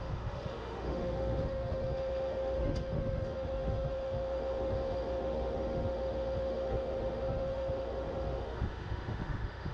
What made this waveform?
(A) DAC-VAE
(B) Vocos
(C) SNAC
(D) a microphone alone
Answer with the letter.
A